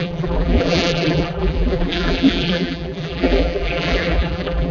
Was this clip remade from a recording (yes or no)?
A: yes